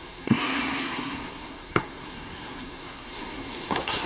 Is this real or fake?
fake